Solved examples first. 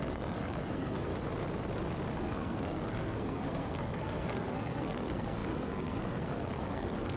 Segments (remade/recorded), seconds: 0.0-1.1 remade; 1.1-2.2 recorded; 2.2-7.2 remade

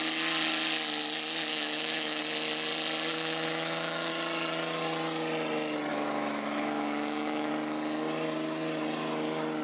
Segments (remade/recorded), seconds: 0.0-1.5 recorded; 1.5-2.2 remade; 2.2-3.1 recorded; 3.1-4.1 remade; 4.1-5.9 recorded; 5.9-7.5 remade; 7.5-9.6 recorded

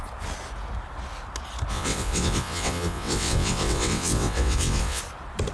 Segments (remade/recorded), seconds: 0.0-1.7 recorded; 1.7-5.0 remade; 5.0-5.5 recorded

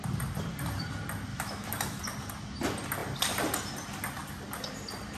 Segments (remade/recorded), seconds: 0.0-1.3 recorded; 1.3-2.0 remade; 2.0-5.2 recorded

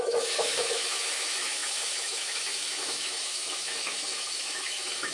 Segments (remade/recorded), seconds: 0.0-5.1 remade

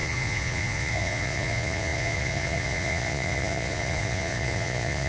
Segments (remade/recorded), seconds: 0.0-5.1 remade

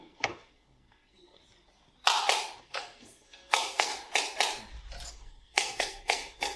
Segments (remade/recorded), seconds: 0.0-1.4 remade; 1.4-2.6 recorded; 2.6-3.9 remade; 3.9-5.1 recorded; 5.1-6.6 remade